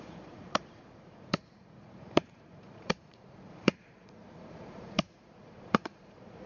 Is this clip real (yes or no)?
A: no